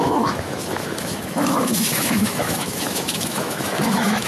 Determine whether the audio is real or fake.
fake